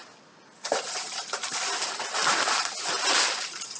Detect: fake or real real